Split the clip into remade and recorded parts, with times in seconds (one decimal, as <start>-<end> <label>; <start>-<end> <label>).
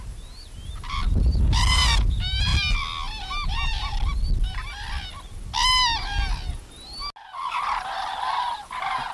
0.0-2.5 remade; 2.5-7.5 recorded; 7.5-9.1 remade